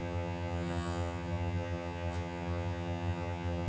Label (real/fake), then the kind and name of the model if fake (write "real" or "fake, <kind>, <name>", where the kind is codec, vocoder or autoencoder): fake, vocoder, HiFi-GAN